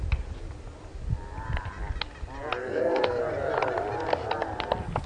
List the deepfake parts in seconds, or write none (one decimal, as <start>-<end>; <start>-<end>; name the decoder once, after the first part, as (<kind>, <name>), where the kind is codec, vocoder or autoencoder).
2.6-3.2 (codec, SNAC)